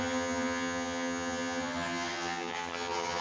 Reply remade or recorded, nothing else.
remade